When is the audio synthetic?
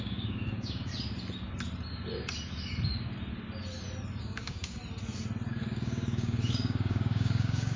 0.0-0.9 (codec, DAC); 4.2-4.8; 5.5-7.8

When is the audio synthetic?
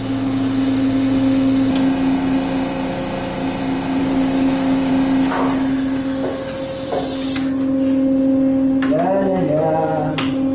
4.0-4.9 (codec, DAC)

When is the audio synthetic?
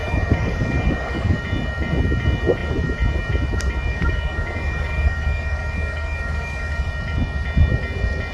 0.0-1.4 (codec, DAC); 3.9-6.9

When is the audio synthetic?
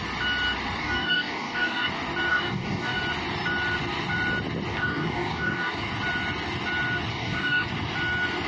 0.8-1.9 (codec, DAC); 2.3-3.0; 4.7-5.9; 7.1-7.7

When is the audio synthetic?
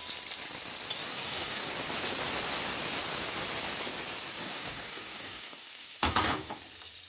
1.1-1.7 (codec, DAC); 4.4-6.6